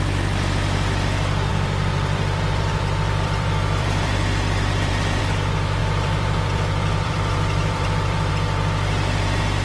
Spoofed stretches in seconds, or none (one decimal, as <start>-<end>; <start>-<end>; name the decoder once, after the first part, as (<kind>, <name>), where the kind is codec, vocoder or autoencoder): 1.5-5.2 (vocoder, BigVGAN v2); 5.8-8.3